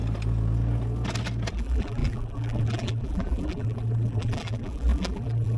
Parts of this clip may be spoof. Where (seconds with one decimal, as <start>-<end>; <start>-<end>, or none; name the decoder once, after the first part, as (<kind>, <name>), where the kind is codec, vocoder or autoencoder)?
1.5-5.6 (vocoder, BigVGAN v2)